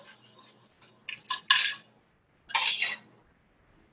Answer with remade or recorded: recorded